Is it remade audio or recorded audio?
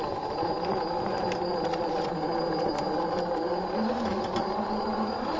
recorded